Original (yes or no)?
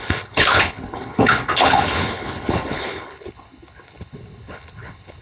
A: no